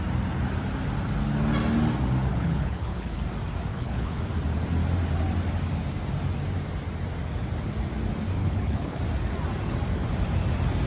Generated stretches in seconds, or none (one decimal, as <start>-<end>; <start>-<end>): 2.3-3.2; 3.7-4.2; 8.4-9.0